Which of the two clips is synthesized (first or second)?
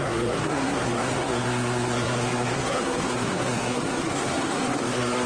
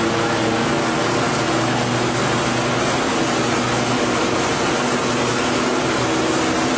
first